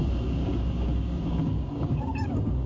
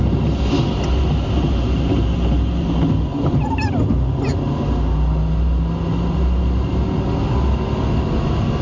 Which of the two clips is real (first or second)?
second